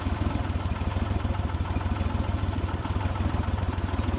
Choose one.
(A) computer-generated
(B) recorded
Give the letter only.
B